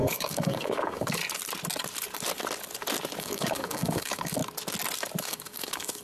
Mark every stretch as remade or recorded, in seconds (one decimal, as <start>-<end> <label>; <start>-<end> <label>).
0.0-1.2 remade; 1.2-3.2 recorded; 3.2-4.4 remade; 4.4-5.2 recorded; 5.2-6.0 remade